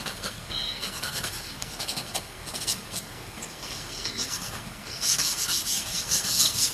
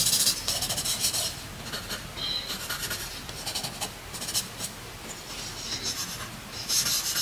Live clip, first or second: second